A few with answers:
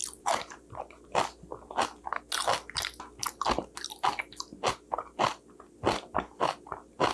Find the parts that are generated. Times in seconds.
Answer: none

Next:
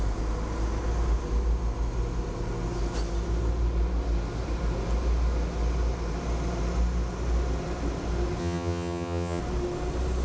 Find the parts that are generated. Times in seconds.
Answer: 8.4-9.4 (vocoder, HiFi-GAN)

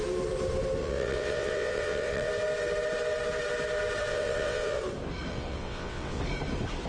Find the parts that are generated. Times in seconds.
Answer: 0.8-2.3 (vocoder, WaveNeXt); 4.1-4.8; 5.3-6.2